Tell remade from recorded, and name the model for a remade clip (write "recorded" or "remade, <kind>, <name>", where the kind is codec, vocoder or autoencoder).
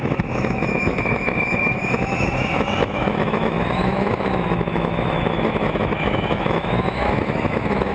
remade, autoencoder, DAC-VAE